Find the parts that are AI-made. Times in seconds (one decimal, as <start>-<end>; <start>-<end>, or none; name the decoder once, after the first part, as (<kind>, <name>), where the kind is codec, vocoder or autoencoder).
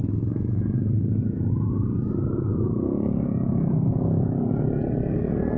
0.0-1.4 (codec, DAC); 2.5-4.5